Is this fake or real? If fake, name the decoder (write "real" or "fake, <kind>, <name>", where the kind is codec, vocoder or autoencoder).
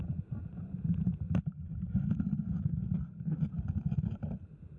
real